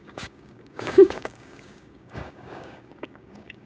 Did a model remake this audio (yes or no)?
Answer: yes